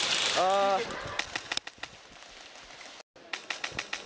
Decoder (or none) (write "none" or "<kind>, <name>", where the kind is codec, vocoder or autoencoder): none